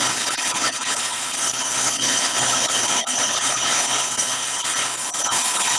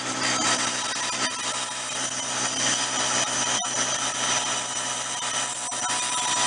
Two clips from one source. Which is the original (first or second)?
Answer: second